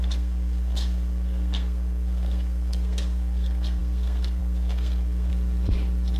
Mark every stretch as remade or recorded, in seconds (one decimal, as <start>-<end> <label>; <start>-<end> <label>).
0.0-5.3 remade; 5.3-6.2 recorded

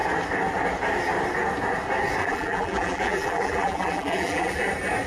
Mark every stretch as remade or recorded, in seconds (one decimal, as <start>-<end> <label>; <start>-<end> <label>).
0.0-2.2 recorded; 2.2-4.6 remade; 4.6-5.1 recorded

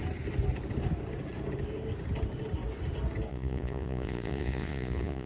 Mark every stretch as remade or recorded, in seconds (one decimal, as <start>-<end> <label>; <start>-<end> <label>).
0.0-3.3 recorded; 3.3-5.3 remade

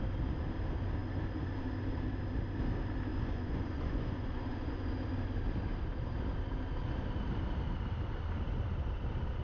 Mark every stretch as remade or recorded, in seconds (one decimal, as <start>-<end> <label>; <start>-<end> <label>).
0.0-3.1 recorded; 3.1-4.9 remade; 4.9-9.4 recorded

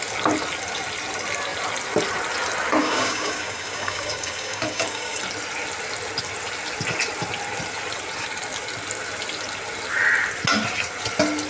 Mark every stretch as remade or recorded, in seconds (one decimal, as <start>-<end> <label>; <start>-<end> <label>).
0.0-2.8 recorded; 2.8-5.2 remade; 5.2-11.5 recorded

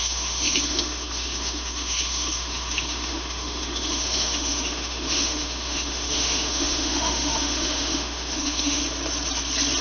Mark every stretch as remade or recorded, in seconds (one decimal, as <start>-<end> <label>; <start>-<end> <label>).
0.0-8.8 remade; 8.8-9.8 recorded

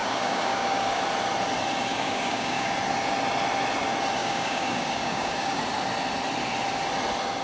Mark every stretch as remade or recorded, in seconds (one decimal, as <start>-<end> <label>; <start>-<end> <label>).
0.0-1.0 remade; 1.0-1.9 recorded; 1.9-2.7 remade; 2.7-4.2 recorded; 4.2-5.6 remade; 5.6-7.4 recorded

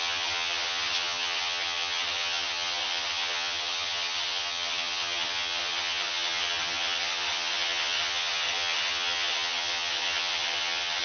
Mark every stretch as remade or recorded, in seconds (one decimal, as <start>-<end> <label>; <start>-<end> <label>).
0.0-11.0 remade